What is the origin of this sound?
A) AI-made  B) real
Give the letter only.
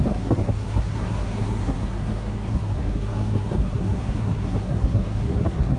A